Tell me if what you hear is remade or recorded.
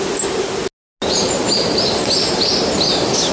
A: recorded